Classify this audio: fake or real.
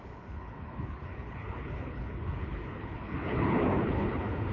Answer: fake